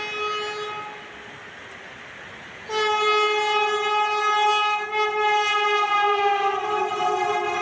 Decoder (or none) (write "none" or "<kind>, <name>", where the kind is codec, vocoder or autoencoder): none